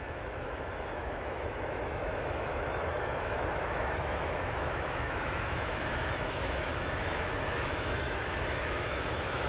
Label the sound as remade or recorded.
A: remade